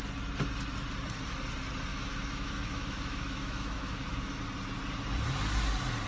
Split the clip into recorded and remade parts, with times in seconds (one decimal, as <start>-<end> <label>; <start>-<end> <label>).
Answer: 0.0-1.9 recorded; 1.9-4.4 remade; 4.4-6.1 recorded